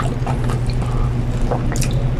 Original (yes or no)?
yes